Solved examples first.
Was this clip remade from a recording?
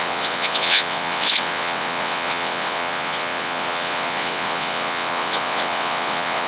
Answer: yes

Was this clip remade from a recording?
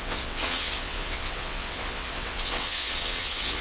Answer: yes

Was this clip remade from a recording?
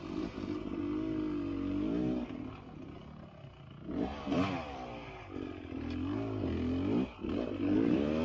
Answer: no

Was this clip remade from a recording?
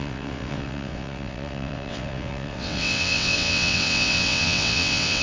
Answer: yes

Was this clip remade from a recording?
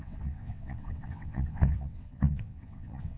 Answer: yes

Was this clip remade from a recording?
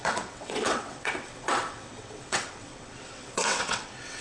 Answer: yes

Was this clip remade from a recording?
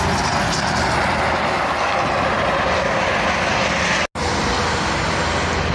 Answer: no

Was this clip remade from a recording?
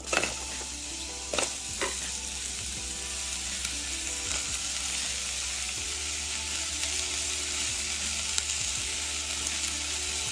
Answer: no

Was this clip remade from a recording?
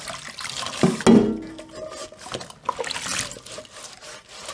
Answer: no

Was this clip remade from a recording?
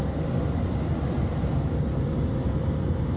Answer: no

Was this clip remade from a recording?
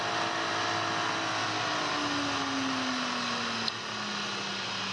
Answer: no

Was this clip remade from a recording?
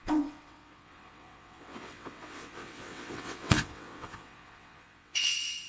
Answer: yes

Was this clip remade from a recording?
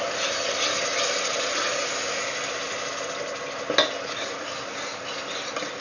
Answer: no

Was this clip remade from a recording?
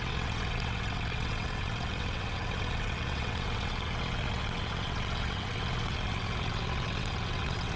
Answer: yes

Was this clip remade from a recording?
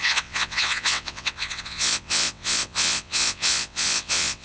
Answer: yes